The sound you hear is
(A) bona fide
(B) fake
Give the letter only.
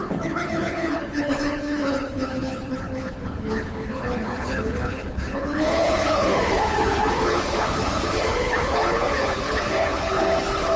B